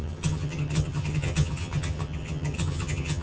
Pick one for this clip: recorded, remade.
remade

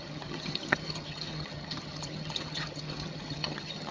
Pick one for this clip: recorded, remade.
remade